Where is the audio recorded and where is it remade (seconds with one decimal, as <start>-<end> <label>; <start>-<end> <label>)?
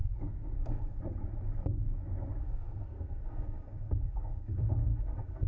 0.0-1.0 remade; 1.0-2.4 recorded; 2.4-5.5 remade